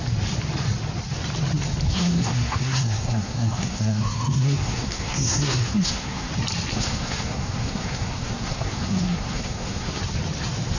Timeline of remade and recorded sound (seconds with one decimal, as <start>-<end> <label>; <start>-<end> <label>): 0.0-1.9 recorded; 1.9-6.3 remade; 6.3-6.7 recorded; 6.7-10.0 remade; 10.0-10.8 recorded